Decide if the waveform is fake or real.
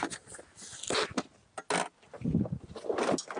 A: real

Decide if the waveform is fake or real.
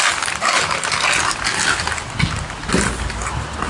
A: real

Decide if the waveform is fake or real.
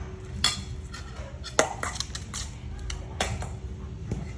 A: real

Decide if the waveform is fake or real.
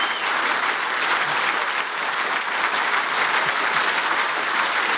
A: real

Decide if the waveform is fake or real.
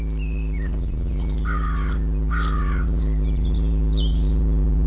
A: real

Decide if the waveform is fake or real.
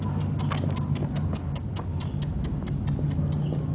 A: real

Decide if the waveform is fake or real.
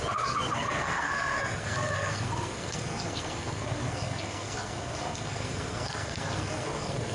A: fake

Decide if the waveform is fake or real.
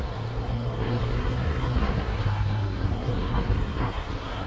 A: fake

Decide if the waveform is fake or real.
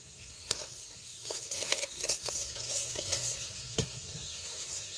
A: fake